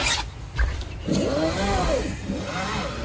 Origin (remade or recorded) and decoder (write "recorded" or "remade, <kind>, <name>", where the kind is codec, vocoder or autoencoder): recorded